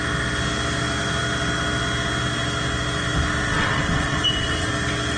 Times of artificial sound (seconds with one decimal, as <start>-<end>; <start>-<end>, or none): 3.5-4.7